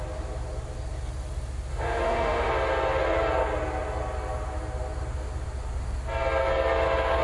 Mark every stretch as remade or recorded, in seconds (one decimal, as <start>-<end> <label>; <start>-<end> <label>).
0.0-1.7 recorded; 1.7-2.5 remade; 2.5-7.2 recorded